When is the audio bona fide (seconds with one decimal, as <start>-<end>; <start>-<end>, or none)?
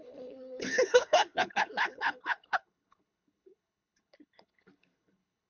none